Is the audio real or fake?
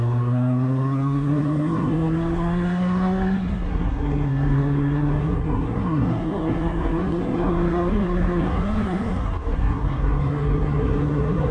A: fake